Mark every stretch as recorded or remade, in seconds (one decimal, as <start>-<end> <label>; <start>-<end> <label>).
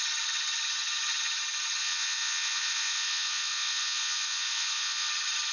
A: 0.0-1.8 recorded; 1.8-5.1 remade; 5.1-5.5 recorded